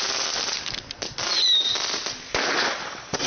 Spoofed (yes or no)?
no